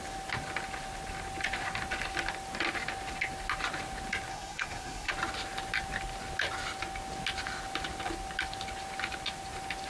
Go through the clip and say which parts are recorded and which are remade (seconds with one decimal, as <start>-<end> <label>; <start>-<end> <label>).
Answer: 0.0-4.3 recorded; 4.3-5.1 remade; 5.1-9.9 recorded